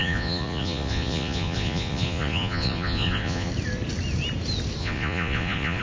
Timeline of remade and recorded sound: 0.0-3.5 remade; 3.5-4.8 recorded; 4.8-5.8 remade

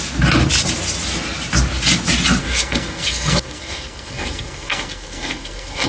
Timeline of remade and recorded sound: 0.0-2.4 recorded; 2.4-5.9 remade

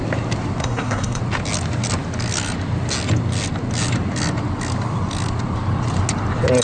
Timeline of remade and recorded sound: 0.0-0.6 recorded; 0.6-1.2 remade; 1.2-6.6 recorded

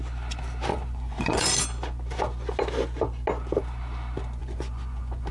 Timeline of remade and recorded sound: 0.0-0.7 recorded; 0.7-1.6 remade; 1.6-4.4 recorded; 4.4-5.3 remade

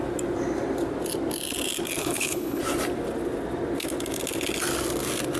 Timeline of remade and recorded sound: 0.0-2.0 recorded; 2.0-2.6 remade; 2.6-5.4 recorded

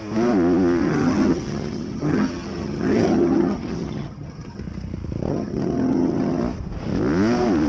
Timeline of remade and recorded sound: 0.0-0.8 recorded; 0.8-4.6 remade; 4.6-5.3 recorded; 5.3-6.4 remade; 6.4-7.7 recorded

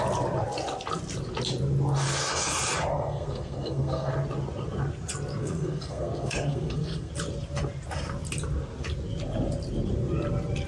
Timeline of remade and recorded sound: 0.0-2.9 recorded; 2.9-4.1 remade; 4.1-5.4 recorded; 5.4-7.1 remade; 7.1-10.7 recorded

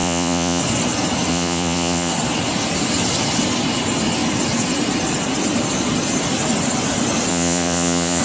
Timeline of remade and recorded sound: 0.0-0.6 remade; 0.6-1.3 recorded; 1.3-2.1 remade; 2.1-7.3 recorded; 7.3-8.2 remade